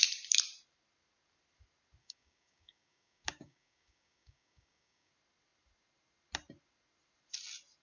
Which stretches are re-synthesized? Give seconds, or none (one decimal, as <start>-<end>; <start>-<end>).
2.0-5.1

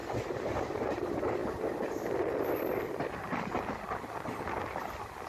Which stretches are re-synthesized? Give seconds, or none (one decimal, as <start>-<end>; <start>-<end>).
none

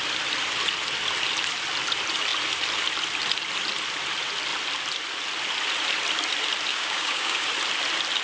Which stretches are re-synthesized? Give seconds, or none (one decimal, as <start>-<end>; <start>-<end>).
6.7-7.5

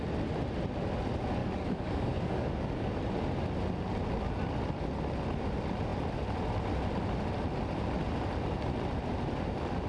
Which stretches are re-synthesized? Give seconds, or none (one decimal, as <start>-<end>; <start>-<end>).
1.4-3.0

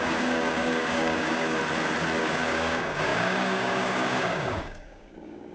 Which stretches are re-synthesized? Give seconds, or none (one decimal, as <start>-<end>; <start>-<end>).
0.0-1.6; 2.2-5.5

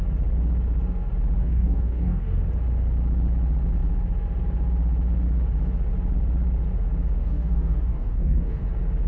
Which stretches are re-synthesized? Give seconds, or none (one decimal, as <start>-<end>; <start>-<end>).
1.4-2.4; 7.2-8.6